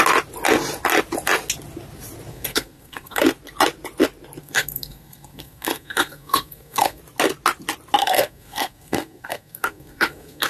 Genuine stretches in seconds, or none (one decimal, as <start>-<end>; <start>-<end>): 0.0-2.3; 3.2-4.4; 7.0-8.0